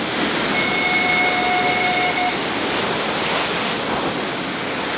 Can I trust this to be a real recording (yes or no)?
yes